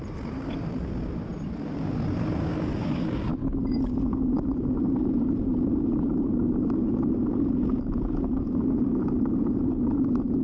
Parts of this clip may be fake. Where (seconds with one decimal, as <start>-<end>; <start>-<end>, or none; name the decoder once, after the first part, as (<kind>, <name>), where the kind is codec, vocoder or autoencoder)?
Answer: 0.0-3.3 (vocoder, BigVGAN v2); 4.1-10.4